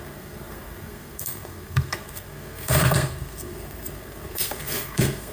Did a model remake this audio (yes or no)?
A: yes